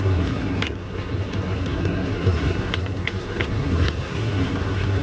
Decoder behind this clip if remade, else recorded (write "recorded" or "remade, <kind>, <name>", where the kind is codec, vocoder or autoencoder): remade, codec, SNAC